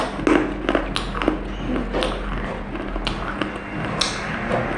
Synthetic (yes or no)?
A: no